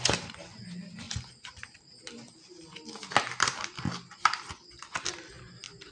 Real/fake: real